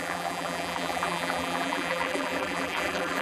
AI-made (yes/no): yes